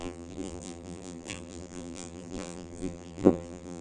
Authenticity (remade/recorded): remade